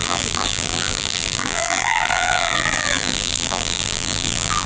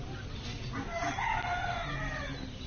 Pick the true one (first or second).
second